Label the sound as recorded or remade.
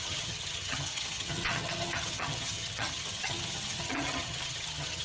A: remade